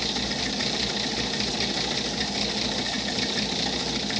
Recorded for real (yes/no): yes